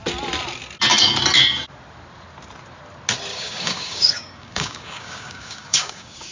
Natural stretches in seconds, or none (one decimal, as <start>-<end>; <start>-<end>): 0.0-3.3